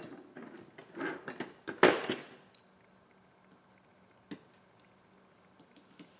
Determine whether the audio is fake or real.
real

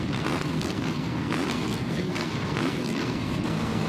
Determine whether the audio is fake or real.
fake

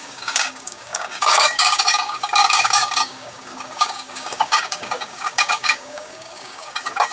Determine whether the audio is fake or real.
fake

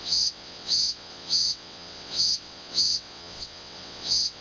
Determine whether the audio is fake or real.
fake